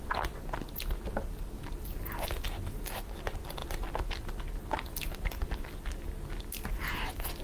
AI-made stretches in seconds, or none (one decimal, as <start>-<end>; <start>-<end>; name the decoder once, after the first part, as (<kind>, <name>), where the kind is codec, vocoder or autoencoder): none